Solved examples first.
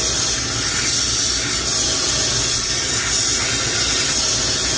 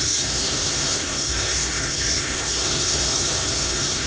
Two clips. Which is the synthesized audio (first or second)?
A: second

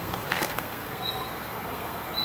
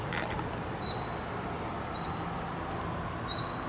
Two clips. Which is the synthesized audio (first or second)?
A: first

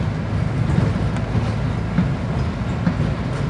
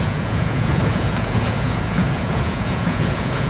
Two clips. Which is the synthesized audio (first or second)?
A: second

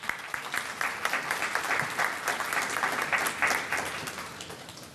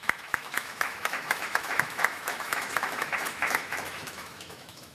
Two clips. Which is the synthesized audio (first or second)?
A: second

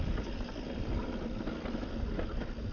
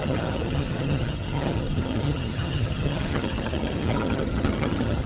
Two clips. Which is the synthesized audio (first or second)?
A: second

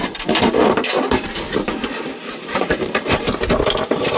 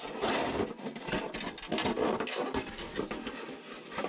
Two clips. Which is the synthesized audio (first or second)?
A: first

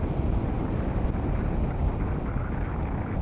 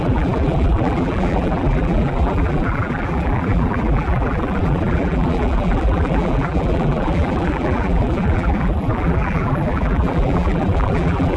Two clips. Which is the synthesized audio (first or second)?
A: second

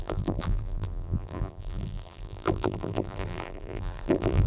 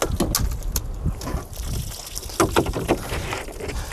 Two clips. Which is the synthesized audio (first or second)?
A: first